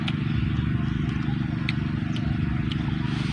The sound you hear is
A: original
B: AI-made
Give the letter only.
A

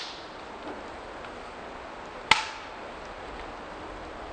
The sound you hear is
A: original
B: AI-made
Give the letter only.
A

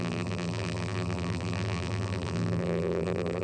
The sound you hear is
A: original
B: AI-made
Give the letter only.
B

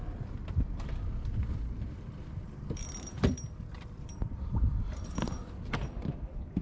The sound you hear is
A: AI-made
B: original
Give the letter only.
A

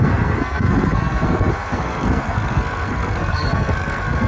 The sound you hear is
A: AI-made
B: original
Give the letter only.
A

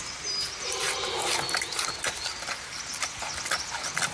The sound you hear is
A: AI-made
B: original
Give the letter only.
B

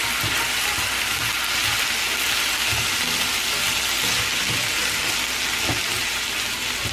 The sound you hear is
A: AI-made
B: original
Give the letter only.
B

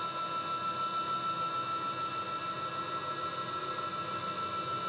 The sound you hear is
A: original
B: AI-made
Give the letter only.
A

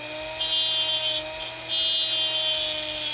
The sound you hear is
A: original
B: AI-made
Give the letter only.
A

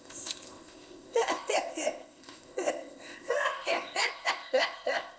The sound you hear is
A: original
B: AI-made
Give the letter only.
B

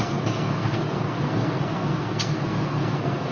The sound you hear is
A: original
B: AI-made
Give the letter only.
B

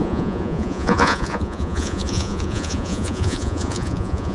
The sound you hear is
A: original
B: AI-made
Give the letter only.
B